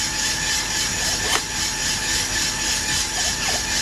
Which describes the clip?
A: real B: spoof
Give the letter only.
A